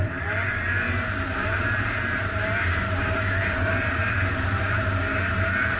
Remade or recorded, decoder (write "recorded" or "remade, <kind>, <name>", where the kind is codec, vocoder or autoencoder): remade, vocoder, BigVGAN v2